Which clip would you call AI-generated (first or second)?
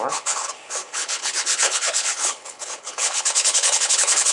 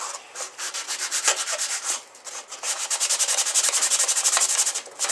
first